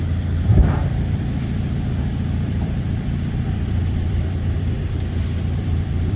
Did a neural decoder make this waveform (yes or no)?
yes